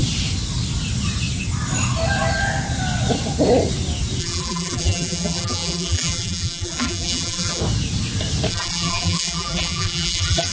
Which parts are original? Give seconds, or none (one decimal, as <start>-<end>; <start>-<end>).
0.0-4.2; 7.6-8.5